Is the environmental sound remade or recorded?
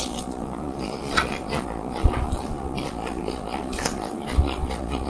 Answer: remade